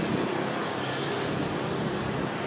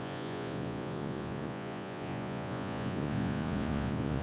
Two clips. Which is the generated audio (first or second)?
second